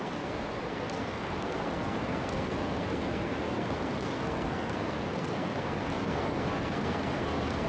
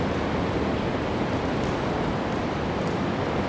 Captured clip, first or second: second